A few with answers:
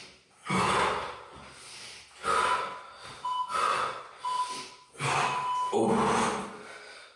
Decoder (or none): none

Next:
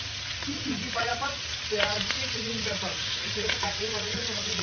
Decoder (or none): vocoder, Vocos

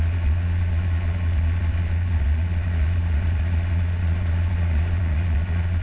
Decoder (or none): vocoder, Vocos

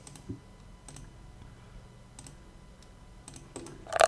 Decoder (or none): none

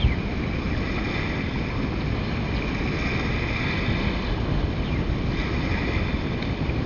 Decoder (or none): none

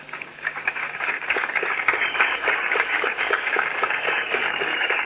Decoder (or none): codec, DAC